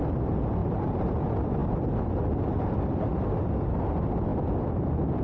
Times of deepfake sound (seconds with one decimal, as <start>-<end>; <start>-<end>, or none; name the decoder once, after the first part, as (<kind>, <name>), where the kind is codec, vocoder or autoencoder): 0.6-1.1 (vocoder, BigVGAN v2)